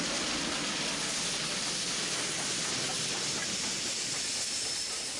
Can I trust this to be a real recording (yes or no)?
yes